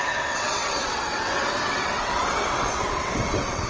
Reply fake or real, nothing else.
fake